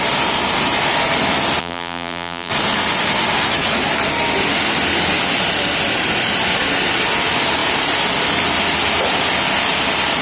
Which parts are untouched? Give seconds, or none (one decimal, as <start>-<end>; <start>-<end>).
0.0-1.6; 2.5-10.2